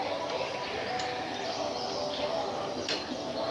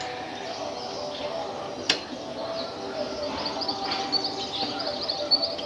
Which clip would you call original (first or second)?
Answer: second